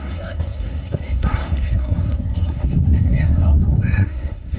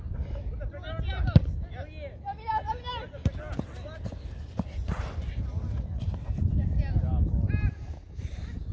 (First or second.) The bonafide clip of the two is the second